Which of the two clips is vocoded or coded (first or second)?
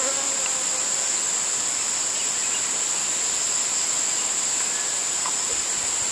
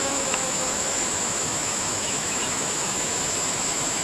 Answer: second